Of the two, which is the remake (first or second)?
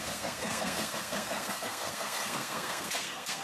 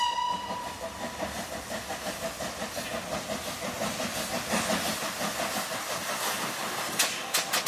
first